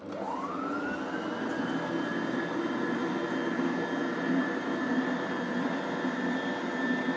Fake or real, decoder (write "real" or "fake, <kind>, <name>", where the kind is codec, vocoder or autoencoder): real